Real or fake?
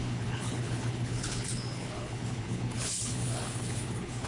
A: fake